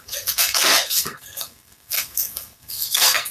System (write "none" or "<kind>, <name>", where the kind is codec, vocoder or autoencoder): codec, SNAC